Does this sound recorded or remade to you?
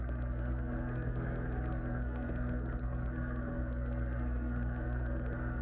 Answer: remade